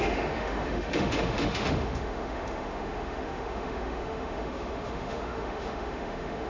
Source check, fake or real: fake